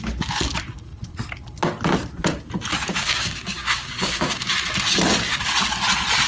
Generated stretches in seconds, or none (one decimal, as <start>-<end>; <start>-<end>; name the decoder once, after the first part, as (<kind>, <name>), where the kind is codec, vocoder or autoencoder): 2.9-4.5 (codec, DAC)